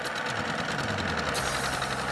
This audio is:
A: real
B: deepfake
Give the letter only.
A